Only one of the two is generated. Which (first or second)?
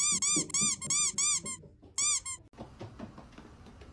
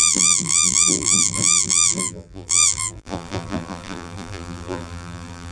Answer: second